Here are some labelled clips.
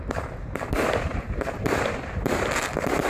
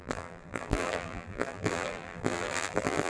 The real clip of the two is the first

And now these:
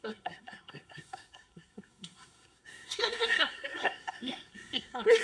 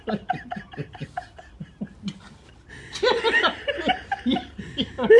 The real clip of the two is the second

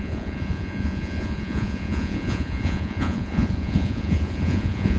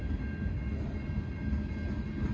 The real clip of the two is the second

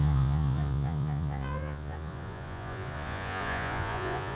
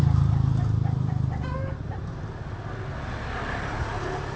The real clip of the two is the second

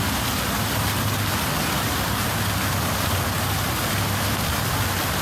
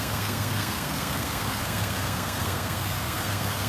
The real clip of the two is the first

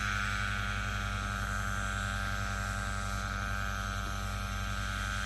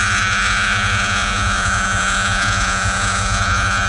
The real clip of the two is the first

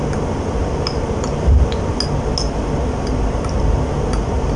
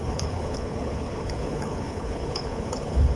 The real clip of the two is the first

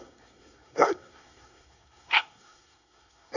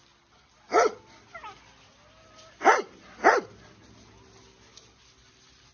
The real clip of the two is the second